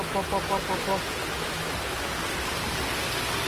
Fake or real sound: real